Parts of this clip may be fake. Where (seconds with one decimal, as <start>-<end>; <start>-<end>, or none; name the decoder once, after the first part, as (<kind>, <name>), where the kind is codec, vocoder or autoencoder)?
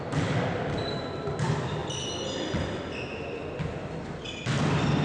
none